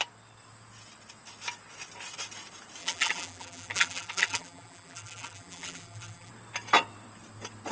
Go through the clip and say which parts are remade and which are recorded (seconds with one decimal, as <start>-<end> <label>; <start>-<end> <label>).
0.0-2.8 recorded; 2.8-6.3 remade; 6.3-7.7 recorded

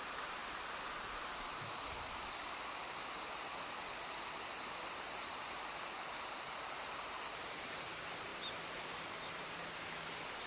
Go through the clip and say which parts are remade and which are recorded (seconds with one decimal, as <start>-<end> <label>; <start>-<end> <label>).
0.0-0.4 remade; 0.4-4.9 recorded; 4.9-8.3 remade; 8.3-9.2 recorded; 9.2-10.5 remade

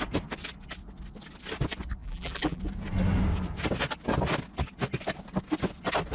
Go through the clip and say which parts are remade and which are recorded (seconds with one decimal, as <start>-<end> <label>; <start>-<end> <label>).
0.0-2.0 recorded; 2.0-2.6 remade; 2.6-6.1 recorded